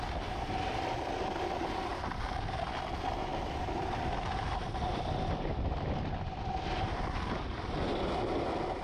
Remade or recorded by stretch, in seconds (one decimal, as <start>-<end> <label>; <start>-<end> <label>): 0.0-1.9 recorded; 1.9-2.8 remade; 2.8-3.3 recorded; 3.3-6.7 remade; 6.7-8.8 recorded